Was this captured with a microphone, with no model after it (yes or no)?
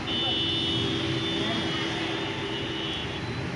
yes